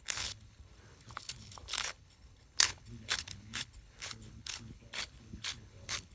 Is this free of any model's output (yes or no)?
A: no